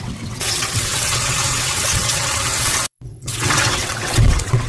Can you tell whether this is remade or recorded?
remade